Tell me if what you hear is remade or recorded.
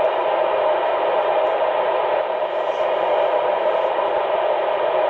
recorded